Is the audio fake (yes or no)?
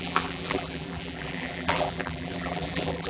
yes